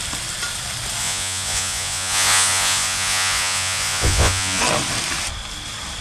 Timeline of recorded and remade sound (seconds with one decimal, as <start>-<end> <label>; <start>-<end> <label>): 0.0-1.0 recorded; 1.0-4.6 remade; 4.6-6.0 recorded

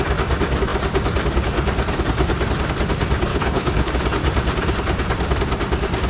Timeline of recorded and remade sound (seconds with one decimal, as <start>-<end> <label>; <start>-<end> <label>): 0.0-3.3 recorded; 3.3-3.9 remade; 3.9-6.1 recorded

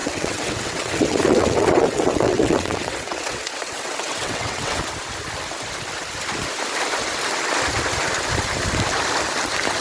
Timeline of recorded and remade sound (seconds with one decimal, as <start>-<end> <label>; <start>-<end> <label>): 0.0-4.8 remade; 4.8-9.8 recorded

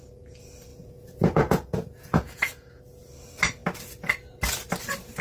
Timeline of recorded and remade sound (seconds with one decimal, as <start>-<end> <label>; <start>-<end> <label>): 0.0-0.7 recorded; 0.7-2.8 remade; 2.8-5.2 recorded

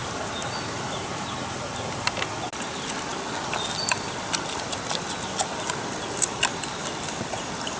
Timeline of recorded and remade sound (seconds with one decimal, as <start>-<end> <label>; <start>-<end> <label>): 0.0-7.8 recorded

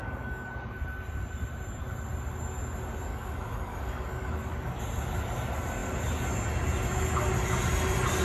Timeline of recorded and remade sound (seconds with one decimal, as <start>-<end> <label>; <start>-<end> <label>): 0.0-0.5 remade; 0.5-3.1 recorded; 3.1-4.8 remade; 4.8-8.2 recorded

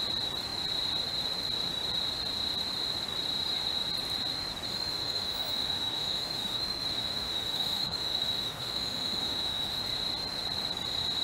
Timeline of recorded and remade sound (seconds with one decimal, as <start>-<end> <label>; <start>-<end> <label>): 0.0-4.7 recorded; 4.7-9.8 remade; 9.8-11.2 recorded

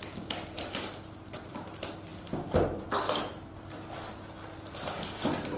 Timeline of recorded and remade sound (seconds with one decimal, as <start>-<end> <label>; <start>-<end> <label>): 0.0-5.6 recorded